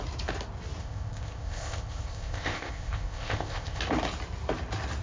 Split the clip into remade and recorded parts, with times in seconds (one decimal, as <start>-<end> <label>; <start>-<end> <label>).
0.0-0.8 recorded; 0.8-3.8 remade; 3.8-5.0 recorded